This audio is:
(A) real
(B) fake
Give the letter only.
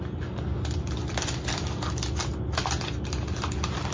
A